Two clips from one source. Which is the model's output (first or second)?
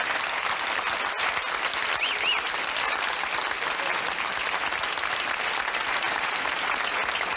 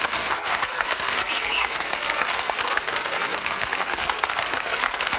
second